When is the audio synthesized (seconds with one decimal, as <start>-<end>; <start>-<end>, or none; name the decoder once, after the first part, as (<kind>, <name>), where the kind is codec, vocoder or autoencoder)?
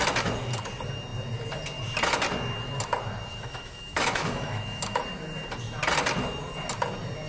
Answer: 3.3-5.0 (autoencoder, DAC-VAE)